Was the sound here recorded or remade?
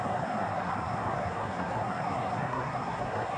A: remade